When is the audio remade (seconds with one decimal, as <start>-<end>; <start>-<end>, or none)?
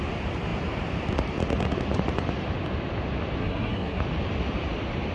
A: 3.4-4.0